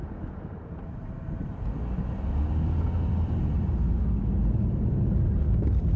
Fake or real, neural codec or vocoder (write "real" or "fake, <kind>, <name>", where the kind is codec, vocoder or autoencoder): real